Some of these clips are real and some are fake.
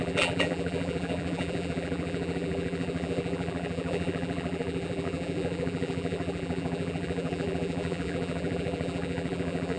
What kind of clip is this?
fake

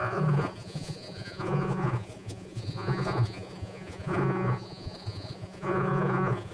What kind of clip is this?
fake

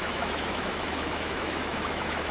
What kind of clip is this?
fake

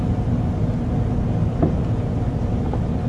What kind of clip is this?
real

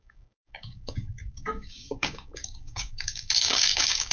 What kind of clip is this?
fake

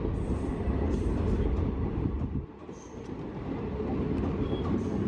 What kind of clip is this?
real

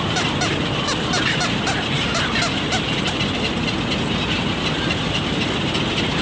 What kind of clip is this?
real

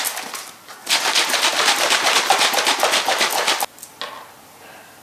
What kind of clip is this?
real